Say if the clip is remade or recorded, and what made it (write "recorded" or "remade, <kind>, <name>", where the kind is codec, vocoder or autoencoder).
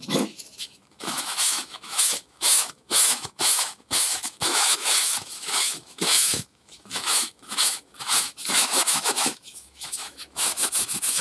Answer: remade, autoencoder, DAC-VAE